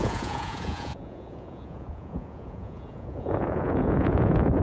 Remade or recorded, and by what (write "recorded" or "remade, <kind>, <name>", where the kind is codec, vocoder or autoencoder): remade, vocoder, Vocos